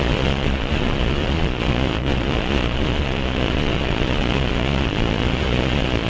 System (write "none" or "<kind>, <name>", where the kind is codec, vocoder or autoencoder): vocoder, Vocos